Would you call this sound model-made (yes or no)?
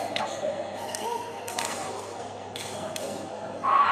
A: yes